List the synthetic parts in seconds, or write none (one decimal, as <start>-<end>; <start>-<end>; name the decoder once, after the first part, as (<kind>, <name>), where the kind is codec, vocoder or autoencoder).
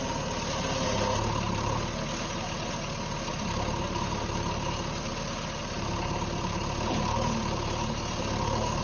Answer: none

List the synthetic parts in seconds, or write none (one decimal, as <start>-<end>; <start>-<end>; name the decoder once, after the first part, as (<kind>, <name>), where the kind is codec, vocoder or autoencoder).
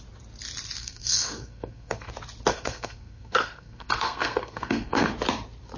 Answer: 0.8-2.1 (codec, SNAC); 2.5-5.1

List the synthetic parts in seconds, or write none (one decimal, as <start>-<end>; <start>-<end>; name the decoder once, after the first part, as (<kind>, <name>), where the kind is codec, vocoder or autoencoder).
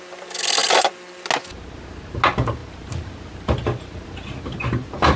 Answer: none